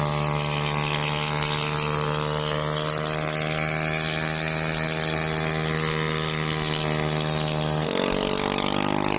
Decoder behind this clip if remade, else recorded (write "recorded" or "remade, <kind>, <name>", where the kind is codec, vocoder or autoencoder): recorded